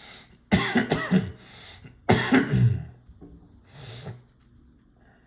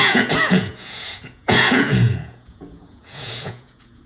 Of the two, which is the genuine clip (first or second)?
first